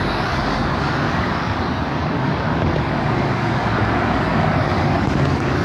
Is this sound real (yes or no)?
no